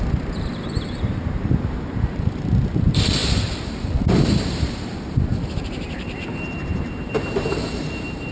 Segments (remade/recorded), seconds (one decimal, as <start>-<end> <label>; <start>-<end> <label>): 0.0-8.3 remade